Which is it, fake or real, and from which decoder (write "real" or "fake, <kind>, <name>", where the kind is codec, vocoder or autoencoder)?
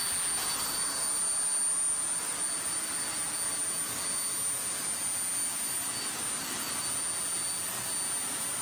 real